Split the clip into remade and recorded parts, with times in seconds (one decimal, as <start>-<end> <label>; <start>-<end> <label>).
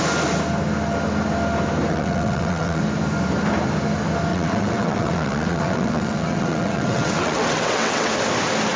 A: 0.0-1.9 recorded; 1.9-2.8 remade; 2.8-4.3 recorded; 4.3-8.1 remade; 8.1-8.8 recorded